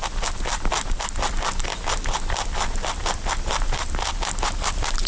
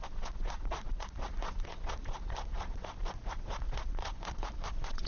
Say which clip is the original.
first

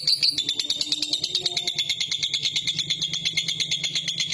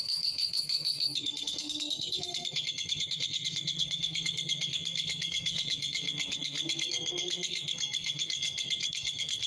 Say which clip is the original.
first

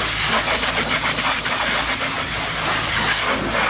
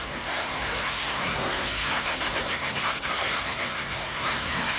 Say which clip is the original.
first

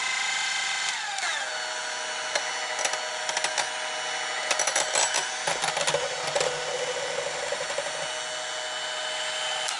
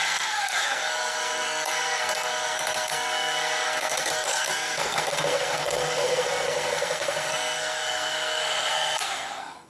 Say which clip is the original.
first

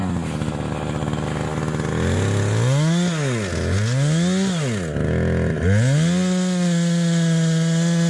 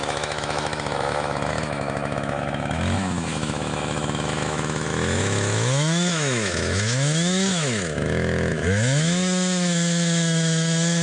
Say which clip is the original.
first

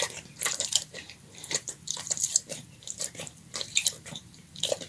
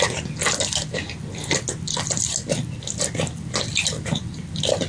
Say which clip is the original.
second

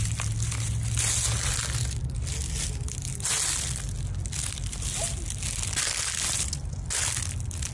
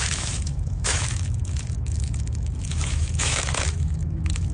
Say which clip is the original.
first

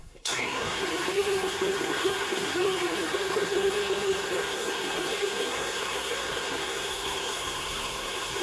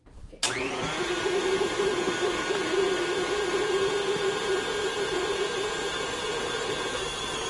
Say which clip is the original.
second